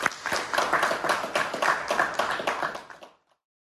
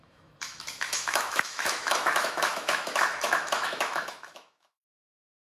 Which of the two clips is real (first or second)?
first